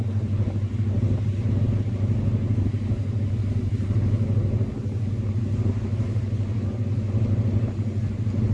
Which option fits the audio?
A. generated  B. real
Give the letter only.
B